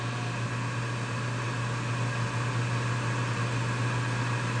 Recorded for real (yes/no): yes